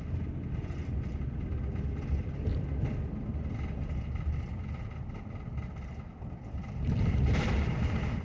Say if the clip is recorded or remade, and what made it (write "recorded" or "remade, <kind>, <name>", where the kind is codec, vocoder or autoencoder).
recorded